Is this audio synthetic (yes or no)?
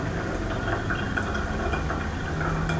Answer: no